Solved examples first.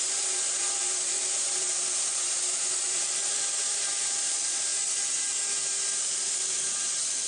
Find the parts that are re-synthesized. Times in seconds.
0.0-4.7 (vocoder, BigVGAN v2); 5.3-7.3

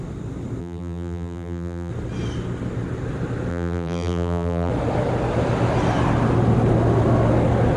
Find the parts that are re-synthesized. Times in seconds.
0.6-1.9 (vocoder, BigVGAN v2); 3.5-4.7